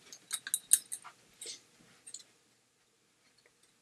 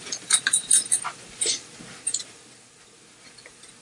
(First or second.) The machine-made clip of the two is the second